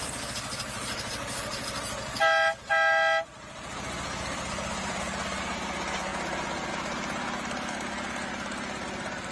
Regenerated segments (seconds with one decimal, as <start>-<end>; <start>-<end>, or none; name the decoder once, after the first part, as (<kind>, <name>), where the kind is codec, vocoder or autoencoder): 3.3-5.0 (vocoder, BigVGAN v2)